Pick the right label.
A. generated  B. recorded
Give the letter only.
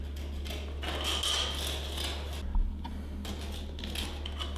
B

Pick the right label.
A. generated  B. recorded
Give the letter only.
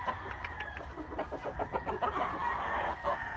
B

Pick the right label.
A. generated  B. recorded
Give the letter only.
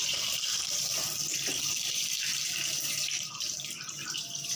A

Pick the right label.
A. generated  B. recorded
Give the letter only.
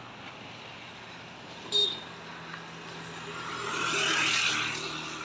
B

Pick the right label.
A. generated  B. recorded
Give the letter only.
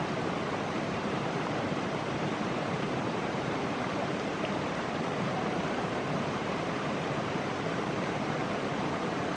A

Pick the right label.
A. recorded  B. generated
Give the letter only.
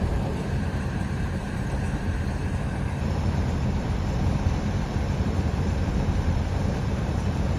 B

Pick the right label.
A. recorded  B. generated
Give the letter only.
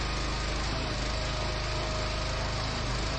A